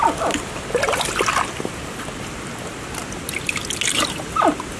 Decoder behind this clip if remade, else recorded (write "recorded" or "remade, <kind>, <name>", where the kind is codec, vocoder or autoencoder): recorded